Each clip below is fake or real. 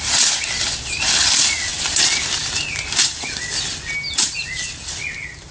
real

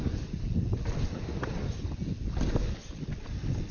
real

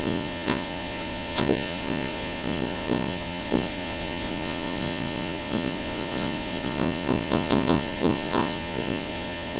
fake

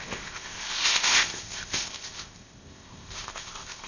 fake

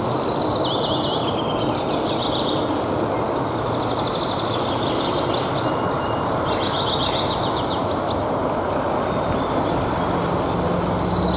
real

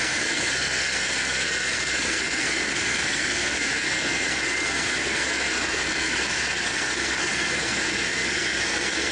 fake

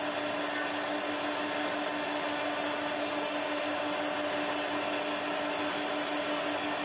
real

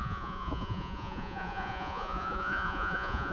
fake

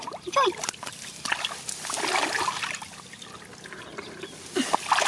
real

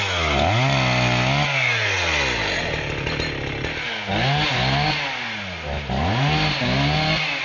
real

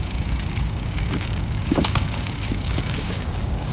fake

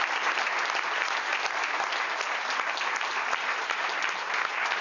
real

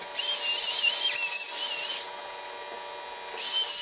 real